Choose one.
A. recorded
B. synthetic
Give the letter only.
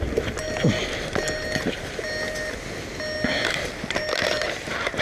A